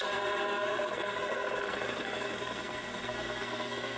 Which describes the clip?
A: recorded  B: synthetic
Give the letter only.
B